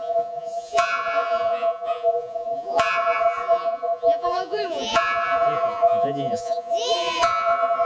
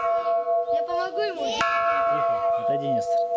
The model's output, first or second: first